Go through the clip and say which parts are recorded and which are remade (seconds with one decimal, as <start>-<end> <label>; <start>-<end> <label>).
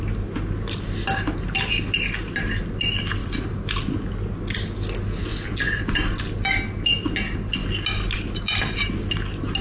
0.0-3.2 recorded; 3.2-4.1 remade; 4.1-5.3 recorded; 5.3-6.2 remade; 6.2-9.6 recorded